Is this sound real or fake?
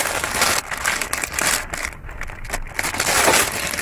real